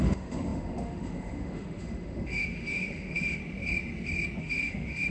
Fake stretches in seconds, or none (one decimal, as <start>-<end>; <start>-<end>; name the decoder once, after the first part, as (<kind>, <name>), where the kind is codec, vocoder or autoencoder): 0.0-3.4 (autoencoder, DAC-VAE); 4.4-5.1